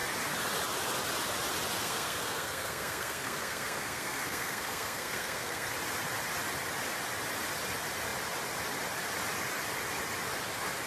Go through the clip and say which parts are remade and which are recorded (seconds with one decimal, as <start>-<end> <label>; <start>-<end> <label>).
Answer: 0.0-1.8 recorded; 1.8-5.7 remade; 5.7-10.9 recorded